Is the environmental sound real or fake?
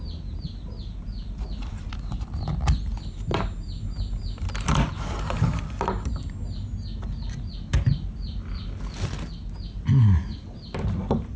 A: real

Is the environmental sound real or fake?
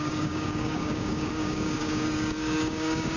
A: fake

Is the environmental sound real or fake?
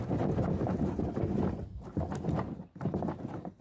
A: real